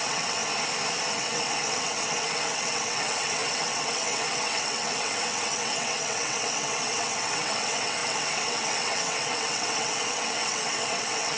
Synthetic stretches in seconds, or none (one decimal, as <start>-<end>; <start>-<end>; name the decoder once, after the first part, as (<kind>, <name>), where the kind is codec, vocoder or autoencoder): 0.0-0.4 (vocoder, WaveNeXt); 1.1-11.4